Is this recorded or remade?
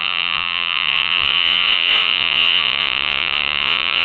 remade